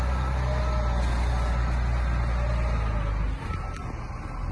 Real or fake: real